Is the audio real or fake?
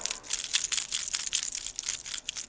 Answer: real